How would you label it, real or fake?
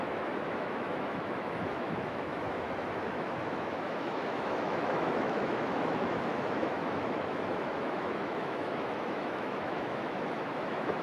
fake